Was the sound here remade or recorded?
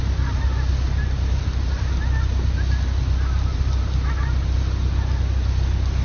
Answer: recorded